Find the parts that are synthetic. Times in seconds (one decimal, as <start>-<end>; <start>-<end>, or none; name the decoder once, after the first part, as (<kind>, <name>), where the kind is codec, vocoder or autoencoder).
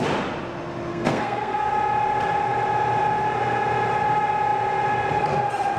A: 0.9-1.7 (codec, SNAC)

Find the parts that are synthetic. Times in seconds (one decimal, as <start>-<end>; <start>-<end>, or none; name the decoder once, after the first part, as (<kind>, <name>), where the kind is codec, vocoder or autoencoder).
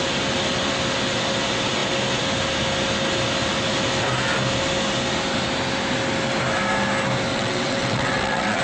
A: 7.3-8.6 (vocoder, WaveNeXt)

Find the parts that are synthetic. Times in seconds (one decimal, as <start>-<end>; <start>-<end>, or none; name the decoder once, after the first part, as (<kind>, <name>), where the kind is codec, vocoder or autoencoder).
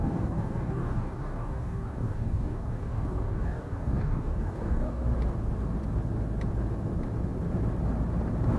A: 0.0-5.0 (codec, DAC)